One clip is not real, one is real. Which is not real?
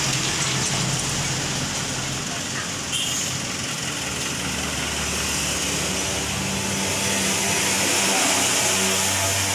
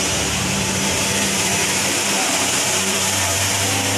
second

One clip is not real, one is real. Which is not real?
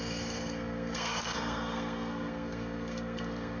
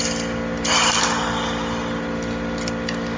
first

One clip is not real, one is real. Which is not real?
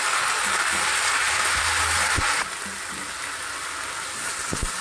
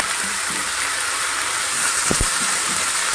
second